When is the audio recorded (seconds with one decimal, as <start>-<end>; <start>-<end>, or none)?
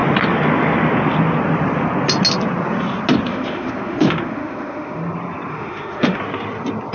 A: 0.0-3.3; 5.0-5.5; 6.2-6.9